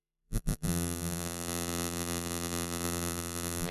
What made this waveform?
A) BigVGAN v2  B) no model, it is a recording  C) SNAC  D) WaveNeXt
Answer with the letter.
A